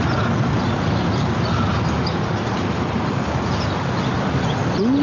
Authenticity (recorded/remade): recorded